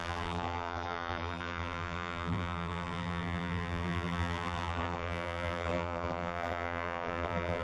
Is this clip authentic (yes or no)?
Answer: no